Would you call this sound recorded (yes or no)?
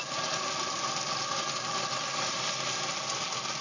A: yes